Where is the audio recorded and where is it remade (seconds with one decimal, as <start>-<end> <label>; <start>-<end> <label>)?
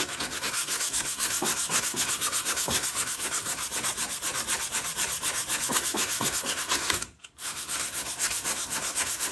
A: 0.0-3.6 remade; 3.6-5.7 recorded; 5.7-9.3 remade